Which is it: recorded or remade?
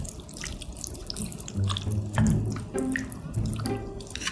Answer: recorded